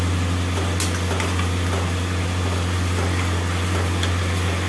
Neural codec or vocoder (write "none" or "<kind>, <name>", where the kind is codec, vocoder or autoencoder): none